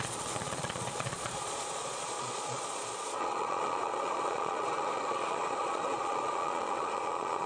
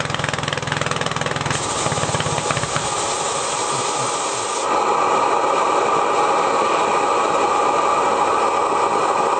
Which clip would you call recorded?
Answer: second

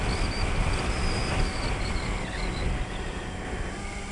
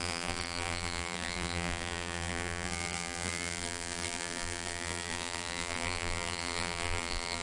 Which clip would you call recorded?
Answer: first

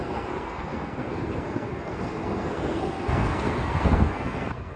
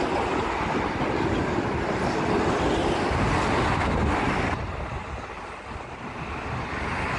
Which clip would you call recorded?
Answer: second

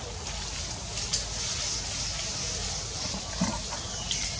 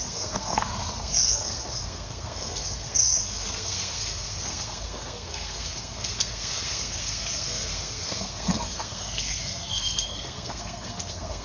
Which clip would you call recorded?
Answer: first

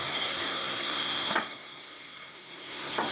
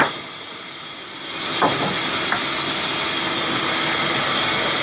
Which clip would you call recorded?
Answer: second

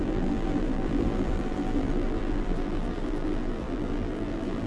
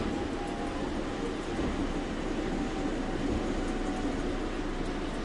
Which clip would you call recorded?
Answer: second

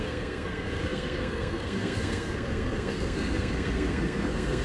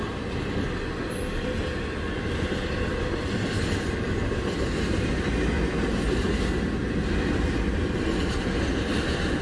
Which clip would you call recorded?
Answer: second